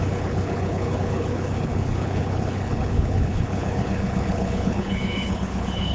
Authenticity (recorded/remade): remade